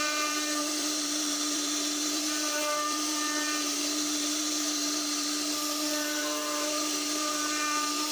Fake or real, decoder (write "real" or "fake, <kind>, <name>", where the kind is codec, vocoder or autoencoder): fake, vocoder, BigVGAN v2